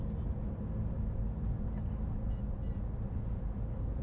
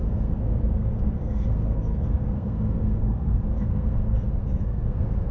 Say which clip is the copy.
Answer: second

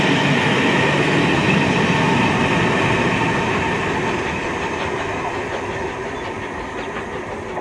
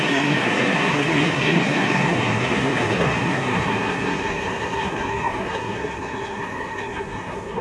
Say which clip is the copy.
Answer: second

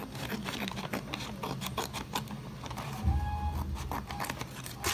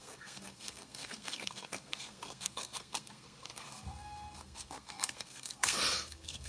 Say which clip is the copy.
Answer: second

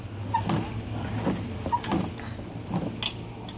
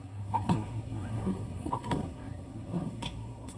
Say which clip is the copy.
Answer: second